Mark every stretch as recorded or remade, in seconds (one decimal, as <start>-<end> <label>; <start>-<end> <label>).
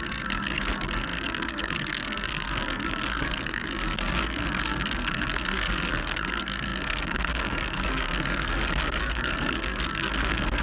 0.0-10.6 remade